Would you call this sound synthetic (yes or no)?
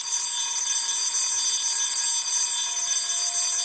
no